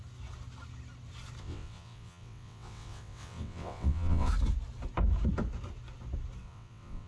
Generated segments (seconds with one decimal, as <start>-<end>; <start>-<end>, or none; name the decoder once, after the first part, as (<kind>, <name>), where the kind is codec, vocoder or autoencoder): 1.4-4.3 (vocoder, WaveNeXt); 6.4-7.1